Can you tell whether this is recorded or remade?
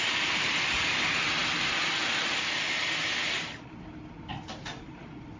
remade